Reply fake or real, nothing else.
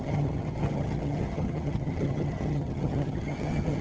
fake